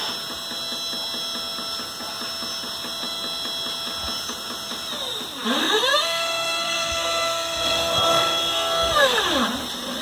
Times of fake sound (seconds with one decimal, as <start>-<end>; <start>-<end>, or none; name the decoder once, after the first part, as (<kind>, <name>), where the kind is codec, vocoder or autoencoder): 5.6-9.2 (codec, SNAC)